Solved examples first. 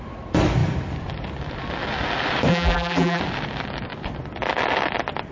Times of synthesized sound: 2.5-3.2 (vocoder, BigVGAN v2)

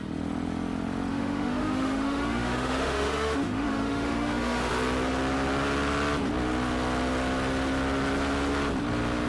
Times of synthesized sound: 1.1-4.7 (autoencoder, DAC-VAE)

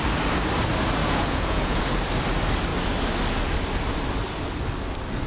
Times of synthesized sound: 1.0-1.8 (vocoder, Vocos)

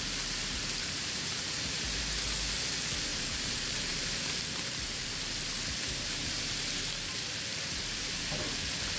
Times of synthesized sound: 0.8-2.0 (vocoder, BigVGAN v2); 3.1-5.0; 7.5-8.2

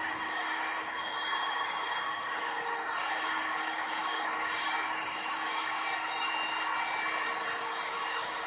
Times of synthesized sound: 0.0-6.3 (codec, DAC); 7.7-8.5

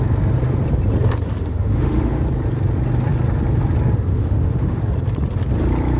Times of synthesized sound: 1.4-2.2 (autoencoder, DAC-VAE); 4.1-4.8

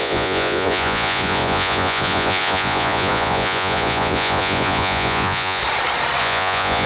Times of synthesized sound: 0.0-5.6 (vocoder, Vocos); 6.2-6.9

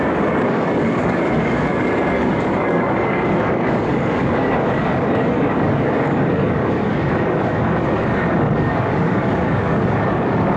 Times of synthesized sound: 0.0-10.6 (codec, DAC)